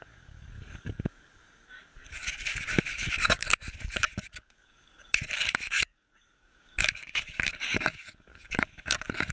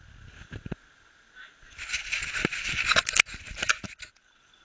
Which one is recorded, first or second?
second